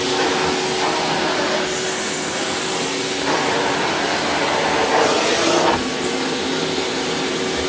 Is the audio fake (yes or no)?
no